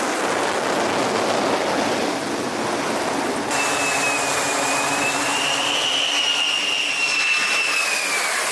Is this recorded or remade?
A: recorded